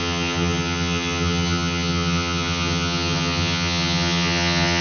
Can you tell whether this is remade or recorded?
remade